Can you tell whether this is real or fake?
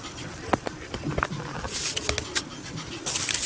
real